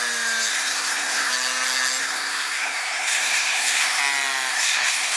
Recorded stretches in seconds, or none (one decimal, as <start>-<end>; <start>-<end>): 0.0-0.5; 1.3-2.0; 4.0-4.5